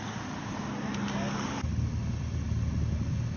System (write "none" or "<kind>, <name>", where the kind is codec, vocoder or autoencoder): none